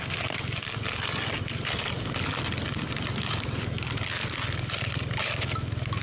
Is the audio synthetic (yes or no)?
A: no